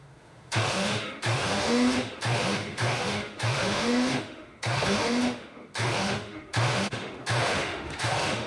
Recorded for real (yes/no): no